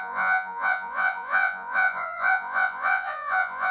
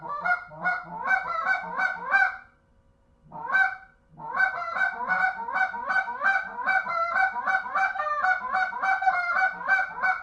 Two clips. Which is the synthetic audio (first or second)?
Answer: first